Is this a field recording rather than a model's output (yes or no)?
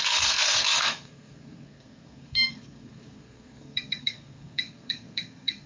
no